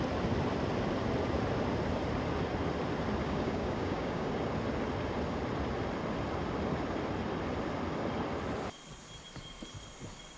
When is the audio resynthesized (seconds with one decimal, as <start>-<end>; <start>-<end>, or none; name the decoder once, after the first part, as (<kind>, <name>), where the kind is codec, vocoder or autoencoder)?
3.2-4.3 (codec, DAC)